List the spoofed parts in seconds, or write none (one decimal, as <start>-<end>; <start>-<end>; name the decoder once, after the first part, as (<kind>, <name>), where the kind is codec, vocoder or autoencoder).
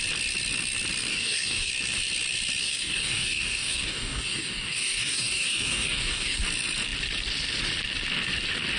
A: 1.1-1.7 (codec, DAC); 2.6-6.4